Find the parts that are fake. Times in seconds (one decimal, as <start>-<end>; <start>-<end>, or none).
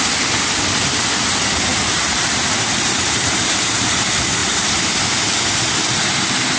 1.7-3.8; 4.4-5.0